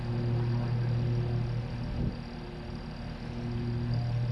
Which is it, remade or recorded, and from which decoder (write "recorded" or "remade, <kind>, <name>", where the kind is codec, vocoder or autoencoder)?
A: recorded